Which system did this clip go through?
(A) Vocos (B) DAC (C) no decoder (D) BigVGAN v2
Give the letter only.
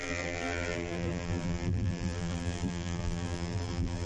D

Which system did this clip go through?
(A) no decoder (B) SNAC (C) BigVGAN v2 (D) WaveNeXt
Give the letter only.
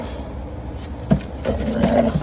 A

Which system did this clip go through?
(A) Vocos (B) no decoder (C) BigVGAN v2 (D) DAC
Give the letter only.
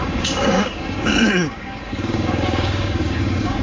D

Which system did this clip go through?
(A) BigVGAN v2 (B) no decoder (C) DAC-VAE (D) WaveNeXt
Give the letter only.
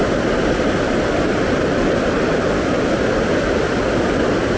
B